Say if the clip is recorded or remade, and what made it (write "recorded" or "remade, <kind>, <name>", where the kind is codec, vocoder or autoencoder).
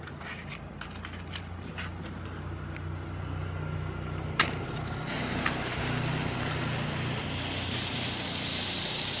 recorded